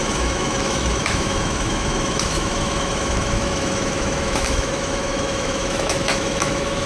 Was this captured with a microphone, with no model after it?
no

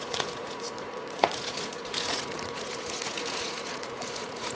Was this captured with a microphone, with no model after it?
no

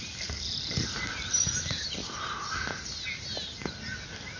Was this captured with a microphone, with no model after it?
yes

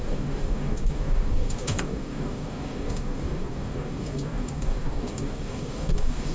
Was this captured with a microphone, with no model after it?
no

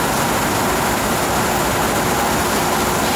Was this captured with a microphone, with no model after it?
yes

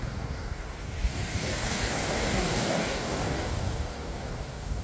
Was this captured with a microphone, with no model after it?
no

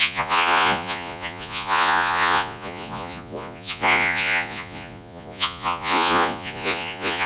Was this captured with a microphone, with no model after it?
no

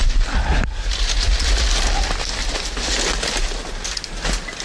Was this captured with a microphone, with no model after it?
yes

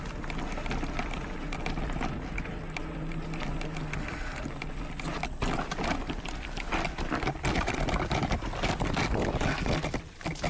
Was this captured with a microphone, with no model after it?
yes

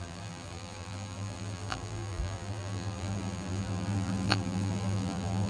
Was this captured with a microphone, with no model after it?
no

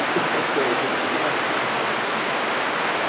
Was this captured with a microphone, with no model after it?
yes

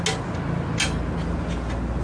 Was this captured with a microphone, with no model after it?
yes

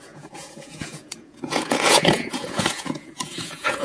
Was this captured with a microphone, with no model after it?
no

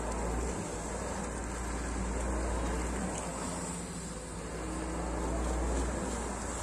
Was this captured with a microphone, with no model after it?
yes